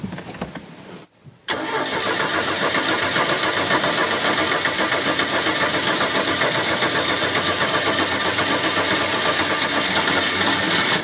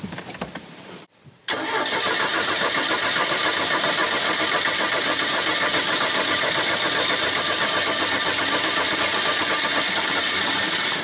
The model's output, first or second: second